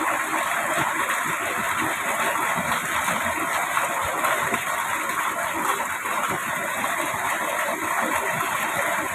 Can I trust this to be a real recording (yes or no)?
yes